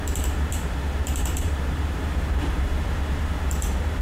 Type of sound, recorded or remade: remade